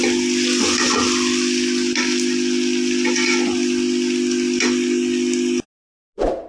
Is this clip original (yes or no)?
yes